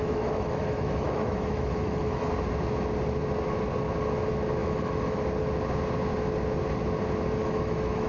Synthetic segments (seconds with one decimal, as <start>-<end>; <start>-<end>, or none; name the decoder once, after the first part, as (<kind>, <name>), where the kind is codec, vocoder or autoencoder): 0.0-2.3 (autoencoder, DAC-VAE); 4.6-5.2; 7.4-8.1